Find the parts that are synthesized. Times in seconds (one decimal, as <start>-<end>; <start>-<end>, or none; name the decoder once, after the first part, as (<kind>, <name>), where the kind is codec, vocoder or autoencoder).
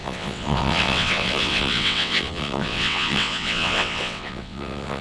0.0-5.0 (vocoder, WaveNeXt)